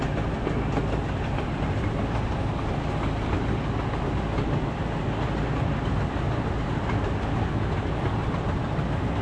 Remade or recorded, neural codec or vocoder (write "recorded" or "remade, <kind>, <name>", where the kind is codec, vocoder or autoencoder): recorded